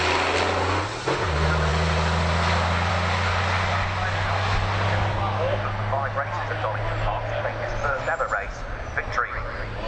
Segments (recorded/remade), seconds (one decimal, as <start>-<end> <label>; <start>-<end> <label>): 0.0-9.9 recorded